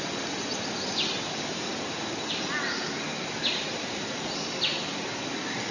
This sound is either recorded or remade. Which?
recorded